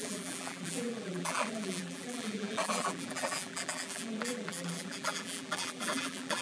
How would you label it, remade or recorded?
remade